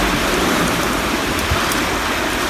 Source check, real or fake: real